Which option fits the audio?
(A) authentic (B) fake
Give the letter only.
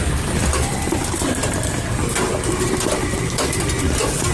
A